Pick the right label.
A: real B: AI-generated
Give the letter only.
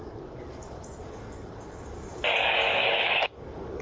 B